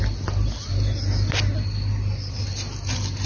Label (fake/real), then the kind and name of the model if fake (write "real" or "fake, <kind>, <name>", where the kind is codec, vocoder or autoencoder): real